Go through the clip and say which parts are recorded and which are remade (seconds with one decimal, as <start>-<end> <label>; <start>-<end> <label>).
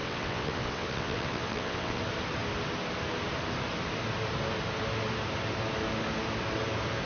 0.0-2.0 remade; 2.0-7.0 recorded